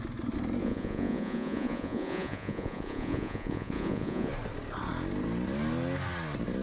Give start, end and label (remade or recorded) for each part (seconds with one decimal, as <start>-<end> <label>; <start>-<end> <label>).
0.0-0.6 recorded; 0.6-4.3 remade; 4.3-6.6 recorded